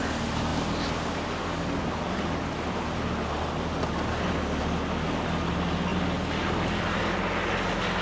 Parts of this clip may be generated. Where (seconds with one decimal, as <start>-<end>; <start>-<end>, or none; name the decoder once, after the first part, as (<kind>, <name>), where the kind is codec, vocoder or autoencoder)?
none